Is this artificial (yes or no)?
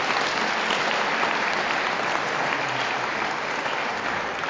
no